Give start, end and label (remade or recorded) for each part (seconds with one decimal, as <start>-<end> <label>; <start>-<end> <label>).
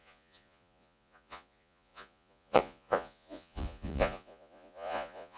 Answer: 0.0-5.4 remade